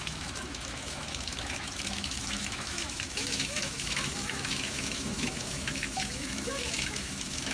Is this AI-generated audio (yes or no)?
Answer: yes